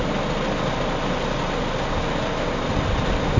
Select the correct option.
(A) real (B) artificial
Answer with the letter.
A